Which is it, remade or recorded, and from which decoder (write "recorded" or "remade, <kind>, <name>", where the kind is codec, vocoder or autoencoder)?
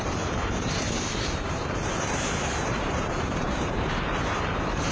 remade, vocoder, BigVGAN v2